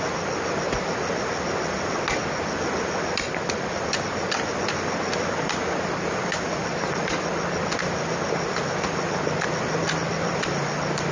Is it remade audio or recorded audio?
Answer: recorded